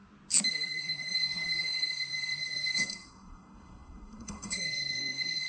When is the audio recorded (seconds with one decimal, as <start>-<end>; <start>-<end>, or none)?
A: 0.0-0.5